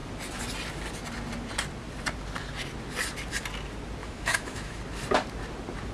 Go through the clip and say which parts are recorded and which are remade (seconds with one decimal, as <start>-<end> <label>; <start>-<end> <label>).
0.0-4.0 recorded; 4.0-4.8 remade; 4.8-5.9 recorded